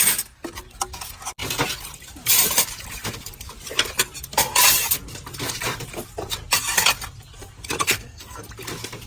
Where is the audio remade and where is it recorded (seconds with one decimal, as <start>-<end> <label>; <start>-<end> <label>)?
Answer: 0.0-7.8 recorded; 7.8-8.4 remade; 8.4-9.1 recorded